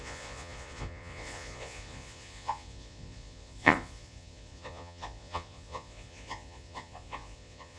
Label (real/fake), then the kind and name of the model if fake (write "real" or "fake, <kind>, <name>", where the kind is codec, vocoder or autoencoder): fake, vocoder, Vocos